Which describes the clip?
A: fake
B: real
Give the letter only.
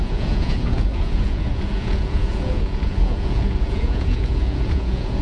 A